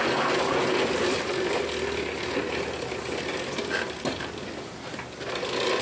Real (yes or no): yes